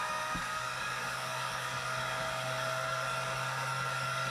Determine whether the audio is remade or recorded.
remade